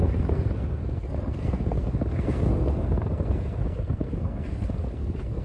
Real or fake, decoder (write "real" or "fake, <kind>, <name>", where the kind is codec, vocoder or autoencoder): fake, codec, SNAC